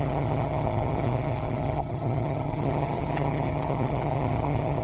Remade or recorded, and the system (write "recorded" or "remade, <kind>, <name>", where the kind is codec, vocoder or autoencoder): remade, vocoder, HiFi-GAN